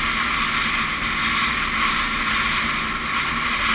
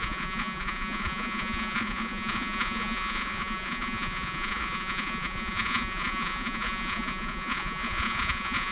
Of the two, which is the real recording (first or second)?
first